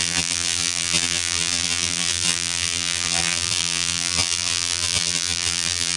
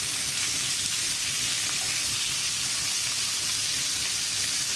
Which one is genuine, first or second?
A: second